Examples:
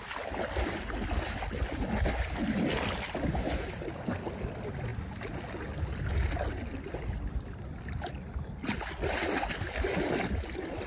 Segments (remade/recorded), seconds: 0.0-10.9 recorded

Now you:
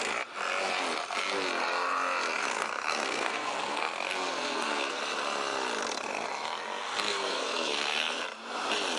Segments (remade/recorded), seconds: 0.0-2.4 recorded; 2.4-5.0 remade; 5.0-6.8 recorded; 6.8-8.2 remade; 8.2-9.0 recorded

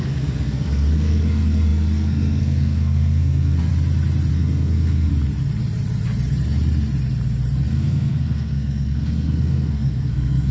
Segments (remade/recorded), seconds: 0.0-3.7 remade; 3.7-4.3 recorded; 4.3-5.1 remade; 5.1-7.7 recorded; 7.7-10.5 remade